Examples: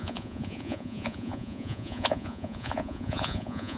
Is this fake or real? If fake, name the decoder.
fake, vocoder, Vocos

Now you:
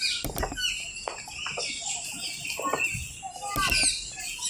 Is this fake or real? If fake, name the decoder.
real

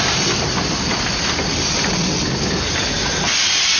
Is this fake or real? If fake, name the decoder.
real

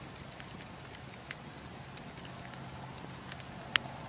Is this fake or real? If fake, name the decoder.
real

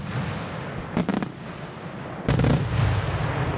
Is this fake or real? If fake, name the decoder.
real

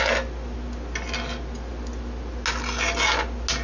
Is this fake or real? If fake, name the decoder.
real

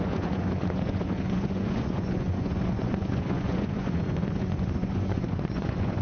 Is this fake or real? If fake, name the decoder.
fake, vocoder, Vocos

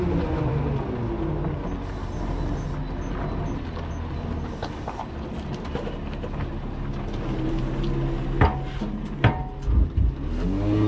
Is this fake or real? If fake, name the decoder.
real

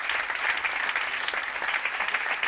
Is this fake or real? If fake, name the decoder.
real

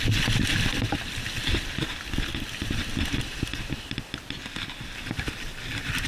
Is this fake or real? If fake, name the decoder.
real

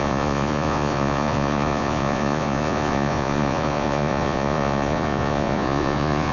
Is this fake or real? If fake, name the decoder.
fake, vocoder, Vocos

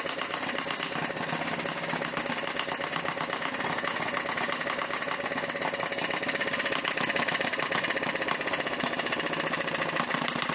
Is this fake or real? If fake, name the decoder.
real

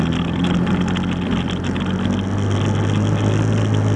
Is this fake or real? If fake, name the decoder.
real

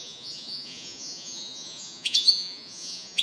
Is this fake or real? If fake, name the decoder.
fake, vocoder, Vocos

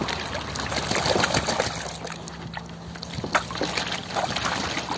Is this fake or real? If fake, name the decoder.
real